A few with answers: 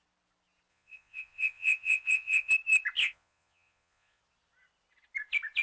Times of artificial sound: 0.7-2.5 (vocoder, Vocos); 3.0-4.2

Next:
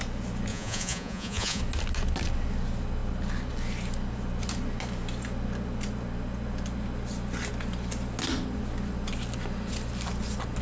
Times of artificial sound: 0.5-1.6 (vocoder, Vocos)

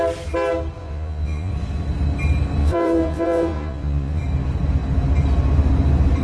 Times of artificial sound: 0.8-1.5 (vocoder, Vocos); 2.6-4.2

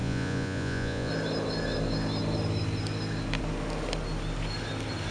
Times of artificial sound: 0.0-1.1 (vocoder, Vocos)

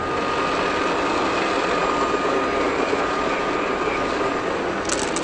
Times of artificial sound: none

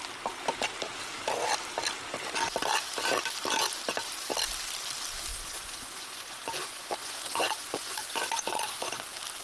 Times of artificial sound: 5.3-9.0 (vocoder, Vocos)